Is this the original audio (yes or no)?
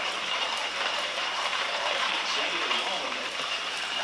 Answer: no